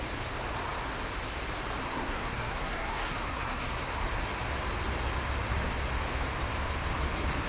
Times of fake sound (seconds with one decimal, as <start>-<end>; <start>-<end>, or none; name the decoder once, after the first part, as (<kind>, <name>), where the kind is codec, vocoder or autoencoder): 1.8-3.8 (codec, SNAC)